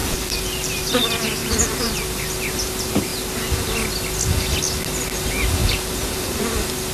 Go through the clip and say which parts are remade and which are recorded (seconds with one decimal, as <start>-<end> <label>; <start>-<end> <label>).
0.0-0.9 remade; 0.9-1.4 recorded; 1.4-2.2 remade; 2.2-5.6 recorded; 5.6-6.4 remade; 6.4-6.9 recorded